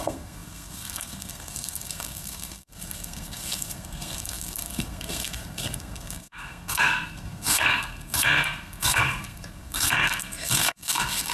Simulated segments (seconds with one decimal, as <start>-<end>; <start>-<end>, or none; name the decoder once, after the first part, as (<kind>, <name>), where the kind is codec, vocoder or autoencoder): 0.0-11.3 (codec, SNAC)